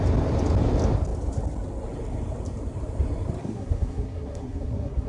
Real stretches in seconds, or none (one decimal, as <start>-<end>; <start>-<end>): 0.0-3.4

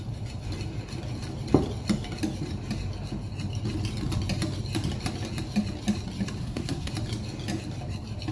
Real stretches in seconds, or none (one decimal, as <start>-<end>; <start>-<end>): 0.0-6.4; 6.9-8.3

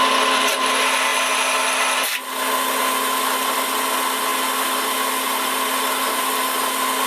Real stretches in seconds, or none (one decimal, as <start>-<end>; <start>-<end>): 0.0-7.1

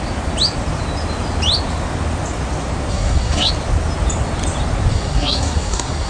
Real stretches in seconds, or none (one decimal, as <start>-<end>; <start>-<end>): 0.0-2.9; 3.5-4.9

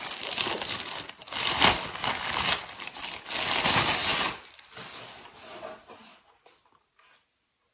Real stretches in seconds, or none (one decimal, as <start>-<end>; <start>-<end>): 0.0-7.7

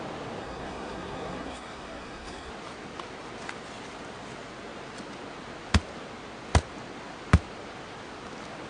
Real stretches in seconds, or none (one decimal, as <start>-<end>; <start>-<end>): 0.0-0.4; 2.5-8.7